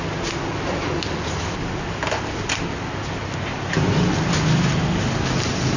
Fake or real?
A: real